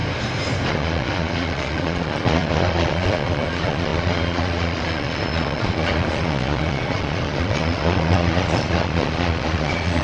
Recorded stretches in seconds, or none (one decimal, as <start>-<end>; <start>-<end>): 0.0-0.7